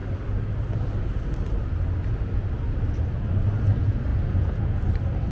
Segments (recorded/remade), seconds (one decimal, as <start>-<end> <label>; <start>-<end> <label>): 0.0-4.1 recorded; 4.1-4.8 remade; 4.8-5.3 recorded